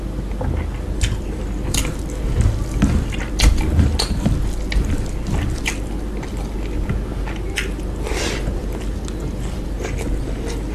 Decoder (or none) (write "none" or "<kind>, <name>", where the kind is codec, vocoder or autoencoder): none